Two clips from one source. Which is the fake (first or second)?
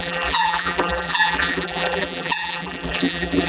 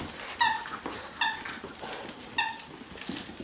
first